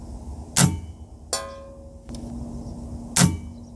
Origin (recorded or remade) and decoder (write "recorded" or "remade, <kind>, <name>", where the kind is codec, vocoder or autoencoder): recorded